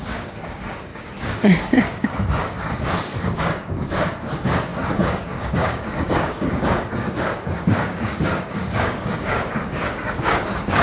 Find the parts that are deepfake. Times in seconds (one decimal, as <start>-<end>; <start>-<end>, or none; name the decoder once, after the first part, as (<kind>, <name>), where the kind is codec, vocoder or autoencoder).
0.0-10.8 (codec, DAC)